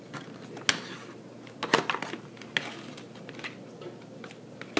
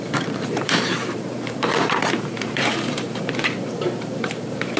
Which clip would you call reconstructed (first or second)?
second